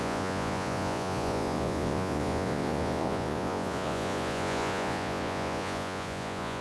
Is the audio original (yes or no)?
no